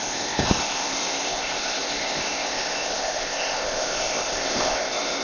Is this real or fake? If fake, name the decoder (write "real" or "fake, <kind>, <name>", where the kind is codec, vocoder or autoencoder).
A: fake, codec, ZipCodec